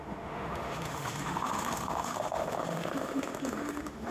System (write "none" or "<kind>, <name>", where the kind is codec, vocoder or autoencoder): autoencoder, DAC-VAE